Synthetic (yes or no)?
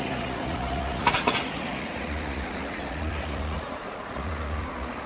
yes